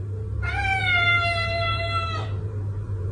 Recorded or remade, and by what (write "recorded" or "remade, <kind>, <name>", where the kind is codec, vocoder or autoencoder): remade, vocoder, BigVGAN v2